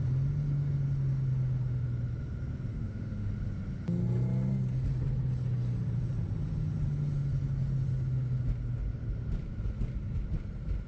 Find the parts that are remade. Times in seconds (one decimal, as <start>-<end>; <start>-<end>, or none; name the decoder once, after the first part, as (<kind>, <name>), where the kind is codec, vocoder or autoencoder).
2.7-3.3 (autoencoder, DAC-VAE)